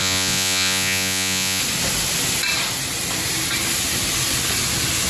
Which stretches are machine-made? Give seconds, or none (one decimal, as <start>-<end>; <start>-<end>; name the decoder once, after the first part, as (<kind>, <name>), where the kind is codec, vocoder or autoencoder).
0.0-1.6 (vocoder, Vocos)